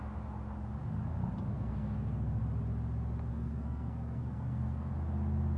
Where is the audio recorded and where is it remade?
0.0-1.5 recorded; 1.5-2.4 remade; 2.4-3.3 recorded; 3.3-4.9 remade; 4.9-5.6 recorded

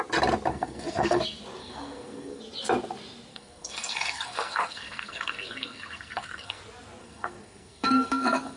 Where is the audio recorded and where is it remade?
0.0-0.5 recorded; 0.5-1.2 remade; 1.2-1.6 recorded; 1.6-2.4 remade; 2.4-3.3 recorded; 3.3-6.6 remade; 6.6-7.0 recorded; 7.0-8.6 remade